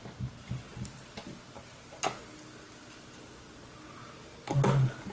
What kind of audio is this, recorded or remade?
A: recorded